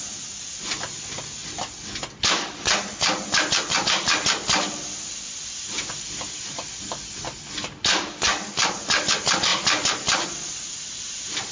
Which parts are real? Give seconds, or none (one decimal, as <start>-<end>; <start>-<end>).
0.0-11.5